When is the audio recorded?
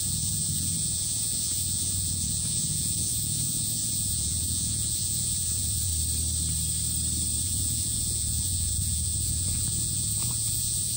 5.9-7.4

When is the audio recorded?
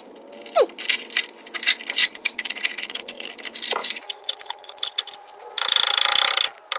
0.0-2.0; 3.3-3.8; 4.8-6.8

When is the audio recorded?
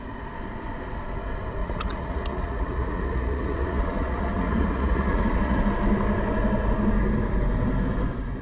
0.0-1.6; 5.6-8.4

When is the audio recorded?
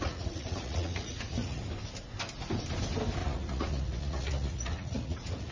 1.6-3.2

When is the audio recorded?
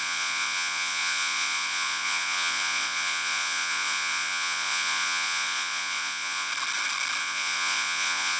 6.5-7.2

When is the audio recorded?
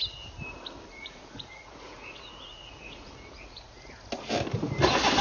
0.0-0.9; 3.9-5.2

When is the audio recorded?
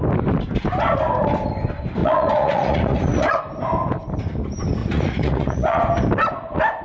0.0-2.0; 3.4-4.8; 5.8-6.8